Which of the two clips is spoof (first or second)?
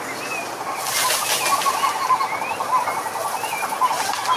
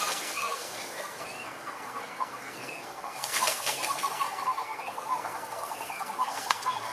second